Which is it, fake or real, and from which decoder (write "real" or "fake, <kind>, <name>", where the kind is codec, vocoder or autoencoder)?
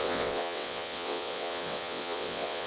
fake, vocoder, WaveNeXt